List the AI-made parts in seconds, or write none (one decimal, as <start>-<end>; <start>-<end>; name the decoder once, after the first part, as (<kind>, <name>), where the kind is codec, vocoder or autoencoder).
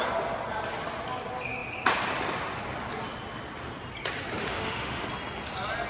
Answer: 4.4-5.1 (autoencoder, DAC-VAE)